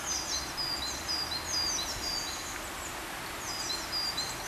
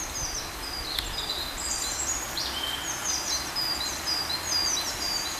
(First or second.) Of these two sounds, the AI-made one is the second